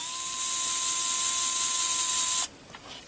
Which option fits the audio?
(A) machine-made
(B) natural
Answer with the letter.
B